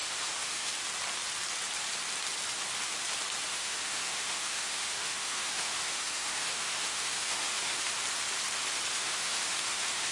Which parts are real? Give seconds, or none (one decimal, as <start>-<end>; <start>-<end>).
0.7-3.5; 7.9-8.9